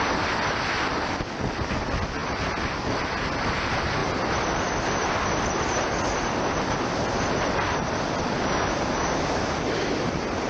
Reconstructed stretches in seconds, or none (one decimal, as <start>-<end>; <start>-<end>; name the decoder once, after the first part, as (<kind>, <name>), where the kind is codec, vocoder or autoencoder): none